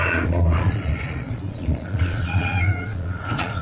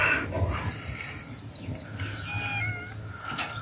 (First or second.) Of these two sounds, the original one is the second